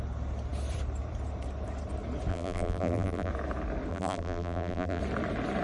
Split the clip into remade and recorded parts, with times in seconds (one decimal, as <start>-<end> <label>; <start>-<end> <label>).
0.0-2.3 recorded; 2.3-3.3 remade; 3.3-3.9 recorded; 3.9-5.0 remade; 5.0-5.6 recorded